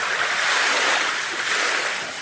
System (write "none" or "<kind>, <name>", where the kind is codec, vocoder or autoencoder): none